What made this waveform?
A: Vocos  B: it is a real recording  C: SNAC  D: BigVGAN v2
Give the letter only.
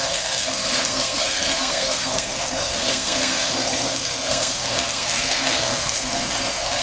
C